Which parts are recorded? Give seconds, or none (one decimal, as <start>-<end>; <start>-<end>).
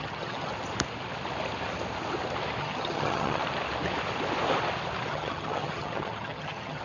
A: 0.5-2.6; 3.4-5.1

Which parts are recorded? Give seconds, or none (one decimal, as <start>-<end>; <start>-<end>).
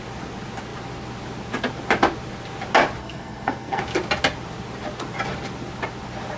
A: 0.0-3.0; 3.8-6.4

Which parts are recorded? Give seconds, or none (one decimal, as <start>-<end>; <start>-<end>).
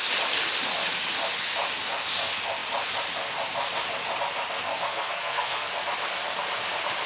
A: 0.0-4.7; 5.7-7.1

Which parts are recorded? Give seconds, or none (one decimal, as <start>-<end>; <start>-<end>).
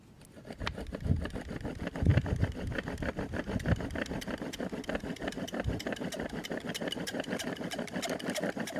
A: 0.0-8.8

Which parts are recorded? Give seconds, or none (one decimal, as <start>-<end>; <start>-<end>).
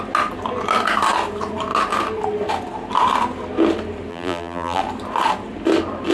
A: 0.0-4.1; 4.8-6.1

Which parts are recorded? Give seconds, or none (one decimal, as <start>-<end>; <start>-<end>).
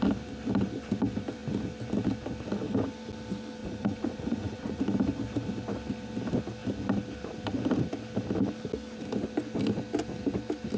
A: 0.0-3.6; 4.8-10.8